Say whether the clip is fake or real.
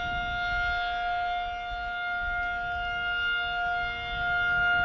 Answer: real